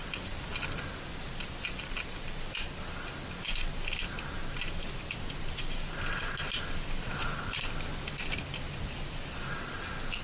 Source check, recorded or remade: recorded